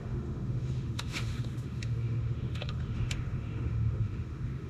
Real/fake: fake